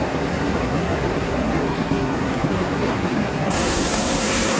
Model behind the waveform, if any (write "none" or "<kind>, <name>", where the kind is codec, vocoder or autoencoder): codec, SNAC